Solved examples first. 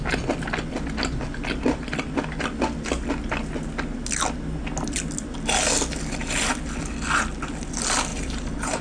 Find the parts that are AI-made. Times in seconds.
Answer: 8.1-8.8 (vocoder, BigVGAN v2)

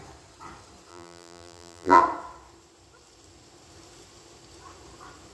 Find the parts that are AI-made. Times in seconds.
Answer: 0.9-2.0 (vocoder, BigVGAN v2)